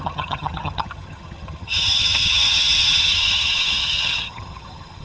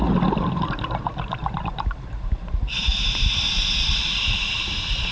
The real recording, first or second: second